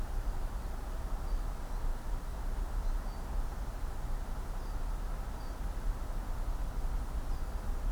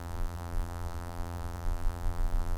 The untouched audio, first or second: first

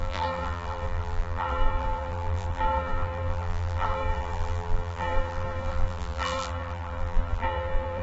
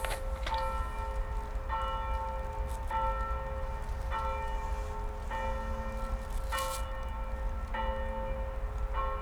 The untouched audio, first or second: second